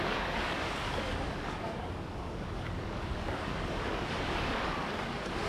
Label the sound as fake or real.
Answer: fake